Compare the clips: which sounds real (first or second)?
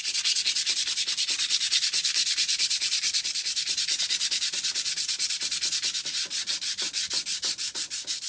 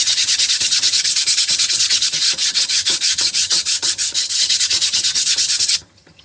first